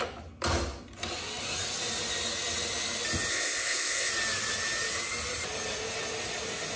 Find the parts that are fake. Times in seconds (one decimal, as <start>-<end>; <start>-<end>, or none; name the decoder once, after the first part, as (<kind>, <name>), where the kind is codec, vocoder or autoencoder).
3.3-4.1 (codec, ZipCodec)